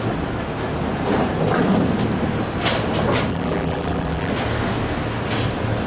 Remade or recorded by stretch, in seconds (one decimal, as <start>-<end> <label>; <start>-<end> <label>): 0.0-3.3 recorded; 3.3-4.3 remade; 4.3-5.9 recorded